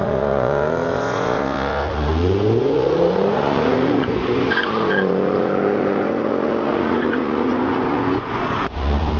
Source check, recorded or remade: remade